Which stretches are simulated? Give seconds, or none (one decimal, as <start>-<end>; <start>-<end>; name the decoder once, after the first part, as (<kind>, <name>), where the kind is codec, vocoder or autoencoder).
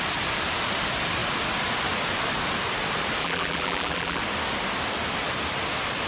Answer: 3.2-4.2 (vocoder, BigVGAN v2)